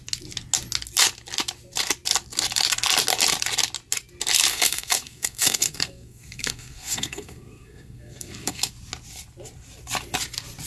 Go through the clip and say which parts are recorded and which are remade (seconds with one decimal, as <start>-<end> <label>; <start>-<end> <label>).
0.0-4.5 recorded; 4.5-8.7 remade; 8.7-10.7 recorded